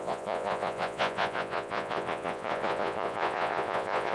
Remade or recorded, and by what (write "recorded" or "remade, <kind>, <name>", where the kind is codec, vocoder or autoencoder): remade, vocoder, Vocos